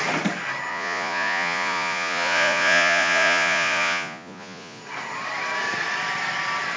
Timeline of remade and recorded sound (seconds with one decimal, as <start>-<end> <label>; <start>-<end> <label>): 0.0-0.7 recorded; 0.7-4.8 remade; 4.8-6.8 recorded